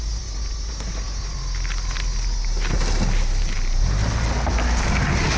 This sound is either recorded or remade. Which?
recorded